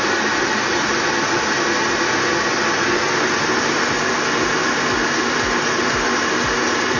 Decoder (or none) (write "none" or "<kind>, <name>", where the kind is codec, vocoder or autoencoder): none